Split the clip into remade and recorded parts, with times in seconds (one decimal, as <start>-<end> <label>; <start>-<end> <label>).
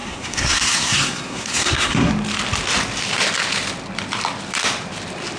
0.0-2.1 remade; 2.1-5.4 recorded